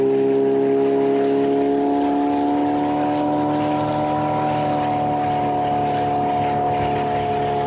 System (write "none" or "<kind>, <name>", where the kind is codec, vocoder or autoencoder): none